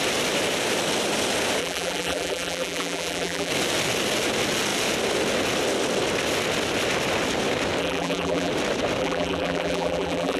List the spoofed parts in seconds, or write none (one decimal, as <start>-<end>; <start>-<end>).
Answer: 1.6-3.5; 7.8-8.5; 9.0-10.4